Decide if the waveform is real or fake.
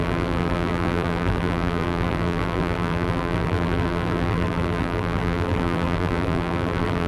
fake